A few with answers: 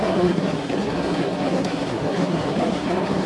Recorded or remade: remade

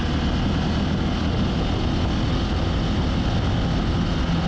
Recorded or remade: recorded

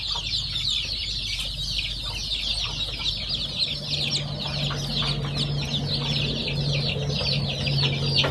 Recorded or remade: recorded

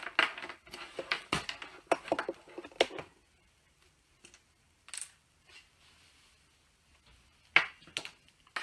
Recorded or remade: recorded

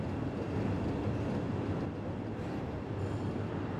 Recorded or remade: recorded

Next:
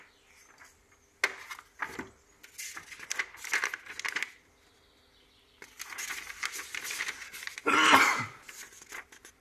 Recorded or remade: recorded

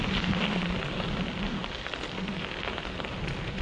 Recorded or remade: recorded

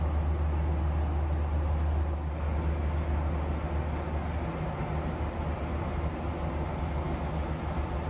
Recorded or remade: recorded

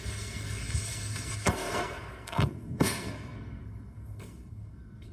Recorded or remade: remade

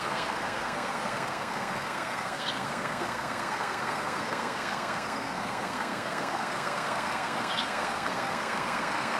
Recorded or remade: remade